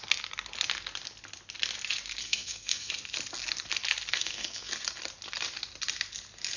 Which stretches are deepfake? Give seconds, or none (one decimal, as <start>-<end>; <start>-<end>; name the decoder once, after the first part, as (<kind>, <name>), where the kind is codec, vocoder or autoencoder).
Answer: 2.2-2.9 (codec, SNAC); 4.1-4.7